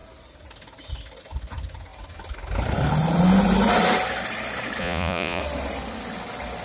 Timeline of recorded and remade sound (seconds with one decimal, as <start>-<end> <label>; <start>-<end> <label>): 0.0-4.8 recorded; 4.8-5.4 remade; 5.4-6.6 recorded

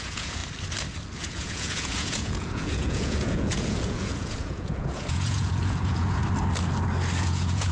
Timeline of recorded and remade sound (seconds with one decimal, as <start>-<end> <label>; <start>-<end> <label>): 0.0-0.4 remade; 0.4-1.2 recorded; 1.2-6.2 remade; 6.2-7.2 recorded; 7.2-7.7 remade

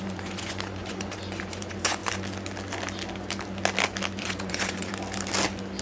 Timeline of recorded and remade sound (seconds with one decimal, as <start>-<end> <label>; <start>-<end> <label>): 0.0-2.0 remade; 2.0-4.2 recorded; 4.2-4.9 remade; 4.9-5.8 recorded

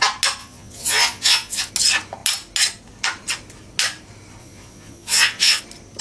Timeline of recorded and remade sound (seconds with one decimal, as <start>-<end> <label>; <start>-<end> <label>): 0.0-0.4 recorded; 0.4-1.7 remade; 1.7-4.4 recorded; 4.4-5.6 remade; 5.6-6.0 recorded

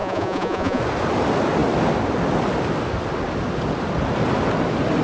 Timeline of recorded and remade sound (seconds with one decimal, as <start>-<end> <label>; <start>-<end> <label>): 0.0-0.8 remade; 0.8-5.0 recorded

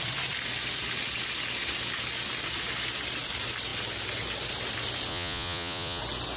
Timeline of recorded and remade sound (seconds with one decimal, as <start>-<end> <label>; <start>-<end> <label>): 0.0-5.1 recorded; 5.1-6.0 remade; 6.0-6.4 recorded